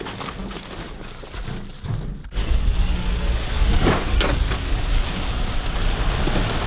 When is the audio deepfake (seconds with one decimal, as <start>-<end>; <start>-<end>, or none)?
2.4-5.3